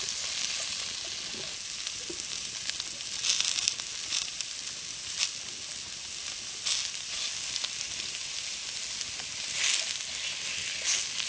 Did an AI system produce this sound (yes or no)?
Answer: no